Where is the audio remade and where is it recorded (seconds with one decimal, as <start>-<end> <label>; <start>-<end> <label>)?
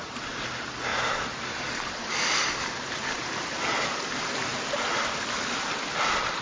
0.0-6.4 recorded